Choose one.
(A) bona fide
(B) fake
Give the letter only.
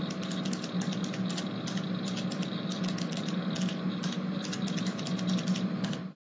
A